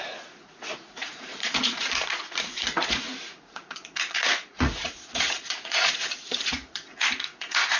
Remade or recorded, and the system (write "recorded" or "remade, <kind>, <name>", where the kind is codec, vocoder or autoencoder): remade, vocoder, Vocos